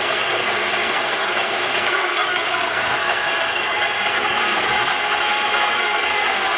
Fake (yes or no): yes